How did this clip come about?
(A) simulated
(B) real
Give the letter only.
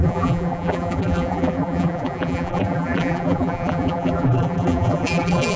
A